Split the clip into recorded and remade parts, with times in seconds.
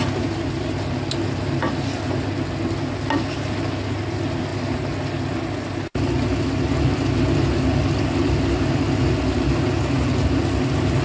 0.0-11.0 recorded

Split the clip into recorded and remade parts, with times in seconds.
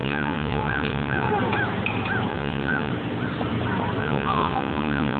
0.0-1.3 remade; 1.3-2.3 recorded; 2.3-2.9 remade; 2.9-4.0 recorded; 4.0-5.2 remade